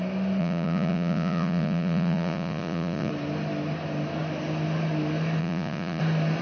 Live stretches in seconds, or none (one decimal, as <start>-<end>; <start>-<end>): 0.0-0.4; 3.1-5.4; 6.0-6.4